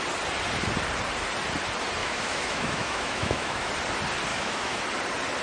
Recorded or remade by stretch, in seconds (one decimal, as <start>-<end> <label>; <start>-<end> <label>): 0.0-2.0 recorded; 2.0-3.7 remade; 3.7-4.3 recorded; 4.3-4.8 remade; 4.8-5.4 recorded